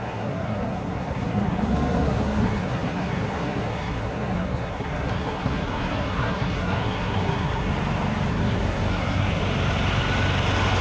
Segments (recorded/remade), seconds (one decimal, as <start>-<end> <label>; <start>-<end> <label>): 0.0-7.7 remade; 7.7-8.3 recorded; 8.3-9.4 remade; 9.4-10.8 recorded